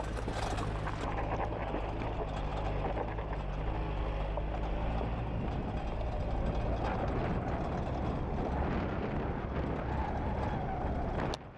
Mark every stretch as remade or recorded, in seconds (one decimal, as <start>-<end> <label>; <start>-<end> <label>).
0.0-11.6 recorded